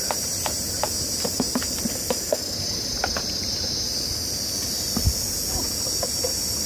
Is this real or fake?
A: real